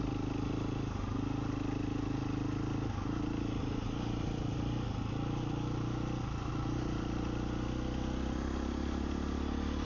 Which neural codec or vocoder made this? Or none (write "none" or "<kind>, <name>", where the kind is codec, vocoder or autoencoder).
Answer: none